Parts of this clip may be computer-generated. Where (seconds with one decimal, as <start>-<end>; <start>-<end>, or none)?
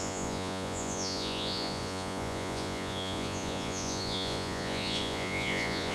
0.0-5.9